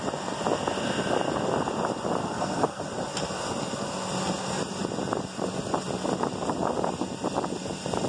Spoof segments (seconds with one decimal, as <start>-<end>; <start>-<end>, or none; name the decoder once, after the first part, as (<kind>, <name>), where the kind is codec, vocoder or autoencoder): 2.2-2.8 (codec, SNAC)